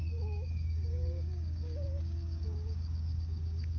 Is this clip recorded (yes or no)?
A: no